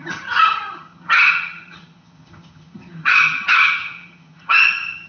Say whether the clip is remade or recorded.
remade